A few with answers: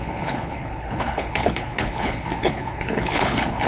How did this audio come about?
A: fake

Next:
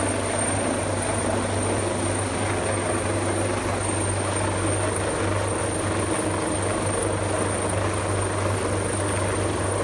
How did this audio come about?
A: real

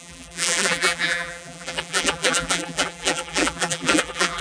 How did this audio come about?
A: fake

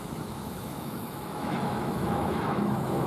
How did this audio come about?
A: fake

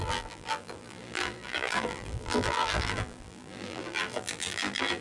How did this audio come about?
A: fake